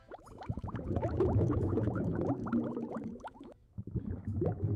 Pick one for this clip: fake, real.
fake